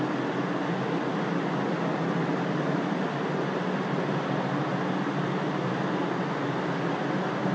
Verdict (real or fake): real